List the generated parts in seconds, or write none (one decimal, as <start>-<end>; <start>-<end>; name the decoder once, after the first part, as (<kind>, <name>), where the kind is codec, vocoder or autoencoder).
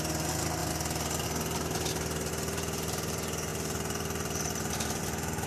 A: 0.0-0.6 (vocoder, BigVGAN v2); 2.3-5.5